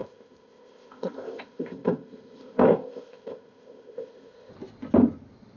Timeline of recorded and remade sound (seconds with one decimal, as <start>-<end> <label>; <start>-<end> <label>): 0.0-4.5 remade; 4.5-5.6 recorded